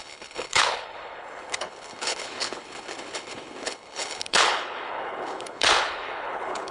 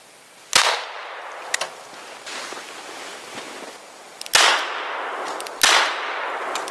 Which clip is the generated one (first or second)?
first